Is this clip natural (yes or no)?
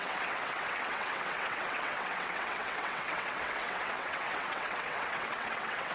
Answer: no